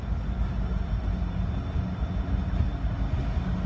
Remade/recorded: recorded